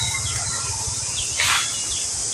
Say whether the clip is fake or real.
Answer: real